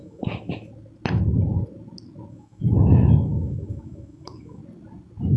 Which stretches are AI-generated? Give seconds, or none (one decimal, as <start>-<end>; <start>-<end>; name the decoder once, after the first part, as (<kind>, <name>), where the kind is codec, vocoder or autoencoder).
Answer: 0.0-0.7 (autoencoder, DAC-VAE); 2.3-4.6

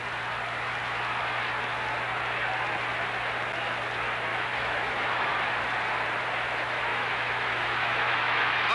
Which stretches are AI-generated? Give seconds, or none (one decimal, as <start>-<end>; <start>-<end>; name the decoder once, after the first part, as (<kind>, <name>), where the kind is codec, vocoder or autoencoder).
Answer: 4.3-5.3 (autoencoder, DAC-VAE); 6.9-8.7